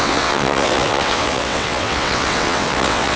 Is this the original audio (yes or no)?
no